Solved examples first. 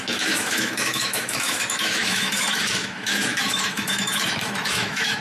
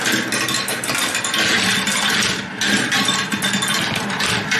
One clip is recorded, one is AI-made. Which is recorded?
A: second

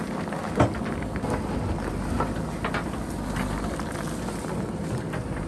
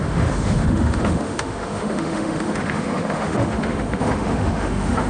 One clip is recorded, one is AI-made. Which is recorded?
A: first